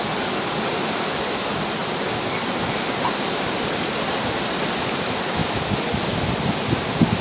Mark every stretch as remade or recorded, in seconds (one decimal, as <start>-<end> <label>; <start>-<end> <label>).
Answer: 0.0-7.2 recorded